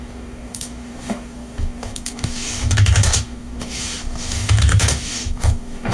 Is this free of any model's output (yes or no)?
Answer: no